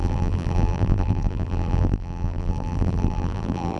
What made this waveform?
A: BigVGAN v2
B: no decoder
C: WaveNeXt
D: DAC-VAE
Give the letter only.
A